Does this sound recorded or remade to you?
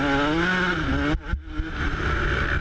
recorded